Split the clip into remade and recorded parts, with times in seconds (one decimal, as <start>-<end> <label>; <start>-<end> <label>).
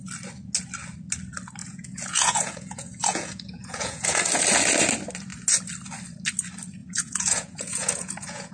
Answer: 0.0-1.6 recorded; 1.6-4.4 remade; 4.4-6.8 recorded; 6.8-8.5 remade